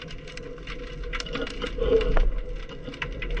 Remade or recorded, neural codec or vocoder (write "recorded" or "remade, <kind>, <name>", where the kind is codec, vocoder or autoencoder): recorded